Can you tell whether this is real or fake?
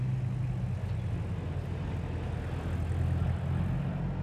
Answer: real